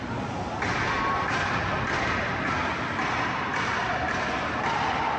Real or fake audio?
real